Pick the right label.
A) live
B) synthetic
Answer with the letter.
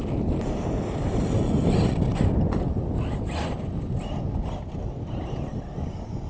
A